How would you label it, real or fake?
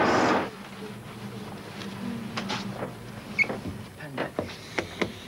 real